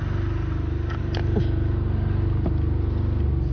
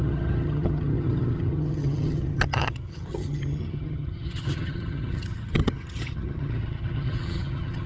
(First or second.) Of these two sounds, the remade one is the second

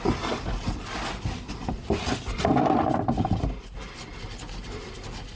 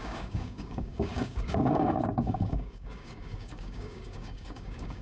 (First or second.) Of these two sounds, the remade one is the second